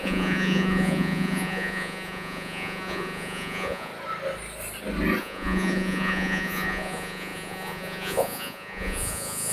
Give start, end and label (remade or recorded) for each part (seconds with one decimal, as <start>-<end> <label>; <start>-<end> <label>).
0.0-3.9 remade; 3.9-5.2 recorded; 5.2-9.5 remade